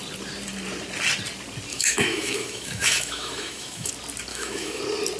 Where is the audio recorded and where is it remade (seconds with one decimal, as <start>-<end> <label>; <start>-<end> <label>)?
0.0-1.7 recorded; 1.7-3.9 remade; 3.9-4.3 recorded; 4.3-4.8 remade; 4.8-5.2 recorded